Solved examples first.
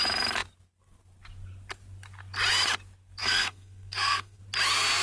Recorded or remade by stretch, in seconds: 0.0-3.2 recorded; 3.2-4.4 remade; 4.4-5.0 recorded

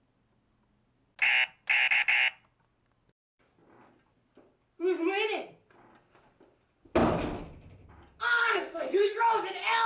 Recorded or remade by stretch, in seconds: 0.0-8.4 recorded; 8.4-9.2 remade; 9.2-9.9 recorded

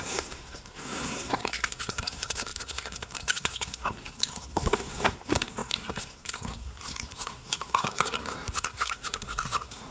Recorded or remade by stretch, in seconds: 0.0-9.9 remade